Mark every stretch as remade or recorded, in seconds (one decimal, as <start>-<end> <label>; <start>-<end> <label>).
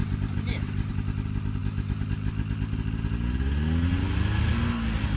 0.0-0.9 remade; 0.9-5.2 recorded